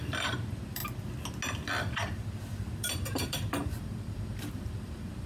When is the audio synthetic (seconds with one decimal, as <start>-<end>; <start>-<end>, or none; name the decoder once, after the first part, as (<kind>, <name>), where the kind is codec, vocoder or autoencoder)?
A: 0.0-0.8 (vocoder, BigVGAN v2); 2.7-5.3